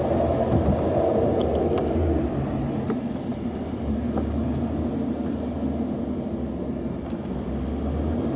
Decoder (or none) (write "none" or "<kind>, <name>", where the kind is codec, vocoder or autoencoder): none